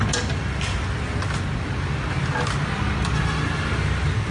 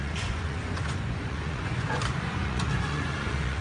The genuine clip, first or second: first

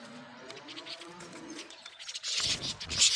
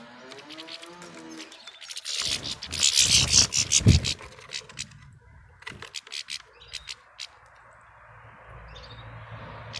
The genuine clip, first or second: second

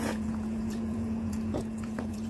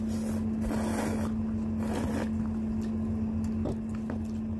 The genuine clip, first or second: second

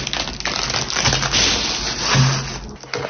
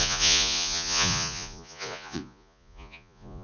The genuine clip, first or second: first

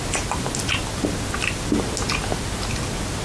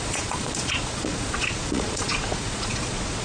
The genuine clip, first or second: first